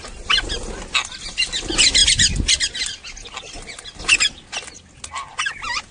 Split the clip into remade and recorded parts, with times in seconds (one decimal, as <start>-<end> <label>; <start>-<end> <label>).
0.0-5.9 recorded